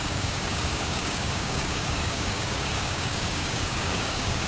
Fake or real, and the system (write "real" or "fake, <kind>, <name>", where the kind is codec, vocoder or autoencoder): fake, codec, DAC